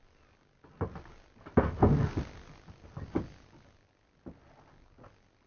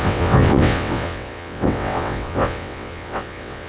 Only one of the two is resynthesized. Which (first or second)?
second